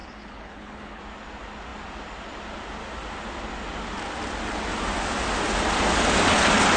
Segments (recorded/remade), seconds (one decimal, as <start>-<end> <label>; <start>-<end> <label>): 0.0-1.0 remade; 1.0-6.8 recorded